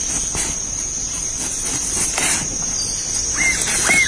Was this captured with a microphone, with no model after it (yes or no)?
yes